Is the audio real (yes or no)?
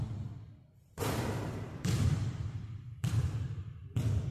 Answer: no